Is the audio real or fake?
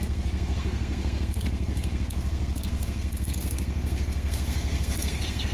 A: fake